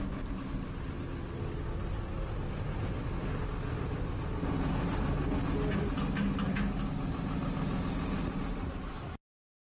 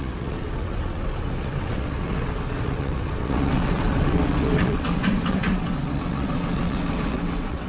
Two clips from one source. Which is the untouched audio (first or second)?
first